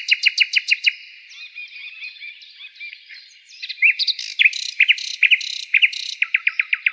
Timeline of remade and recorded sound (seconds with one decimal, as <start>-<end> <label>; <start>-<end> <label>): 0.0-1.8 recorded; 1.8-2.5 remade; 2.5-6.9 recorded